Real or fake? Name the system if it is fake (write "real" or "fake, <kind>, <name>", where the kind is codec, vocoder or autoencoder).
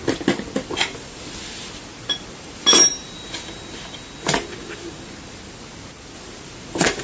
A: real